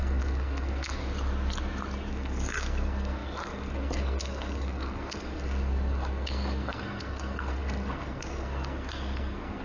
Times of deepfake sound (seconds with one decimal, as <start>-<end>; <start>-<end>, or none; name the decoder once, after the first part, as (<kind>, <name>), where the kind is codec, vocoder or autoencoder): 0.0-1.0 (codec, SNAC); 2.1-9.6